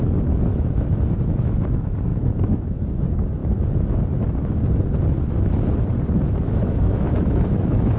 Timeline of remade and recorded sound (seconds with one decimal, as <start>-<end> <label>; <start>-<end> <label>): 0.0-3.4 remade; 3.4-6.6 recorded; 6.6-8.0 remade